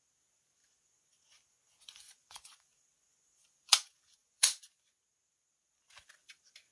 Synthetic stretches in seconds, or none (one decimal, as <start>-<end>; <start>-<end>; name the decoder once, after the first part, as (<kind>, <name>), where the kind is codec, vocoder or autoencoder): 0.6-4.6 (vocoder, Vocos)